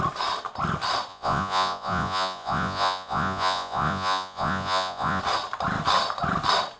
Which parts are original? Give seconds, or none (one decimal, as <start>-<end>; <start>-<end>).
0.0-1.1; 5.2-6.8